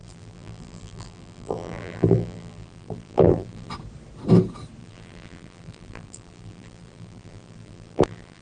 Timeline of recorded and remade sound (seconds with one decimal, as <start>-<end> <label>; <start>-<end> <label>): 0.0-3.7 remade; 3.7-4.8 recorded; 4.8-8.4 remade